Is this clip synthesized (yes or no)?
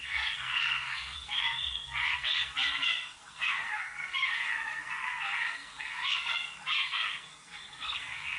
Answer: yes